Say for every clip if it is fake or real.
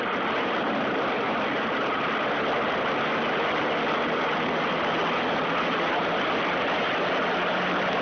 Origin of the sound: real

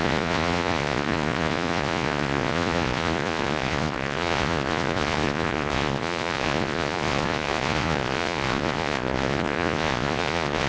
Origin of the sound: fake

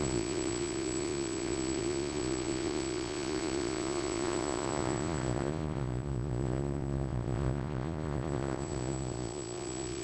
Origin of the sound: fake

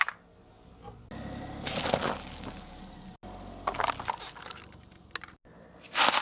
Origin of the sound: real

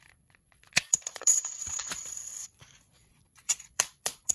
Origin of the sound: fake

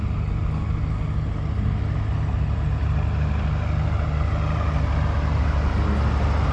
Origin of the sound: real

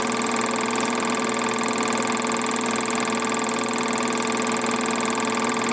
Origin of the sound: real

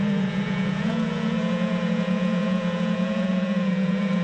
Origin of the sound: fake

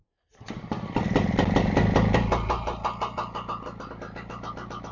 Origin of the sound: real